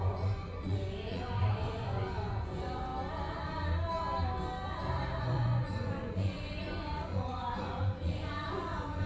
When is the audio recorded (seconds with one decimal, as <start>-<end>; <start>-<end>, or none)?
2.9-5.2